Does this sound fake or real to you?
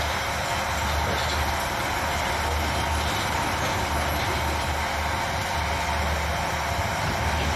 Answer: real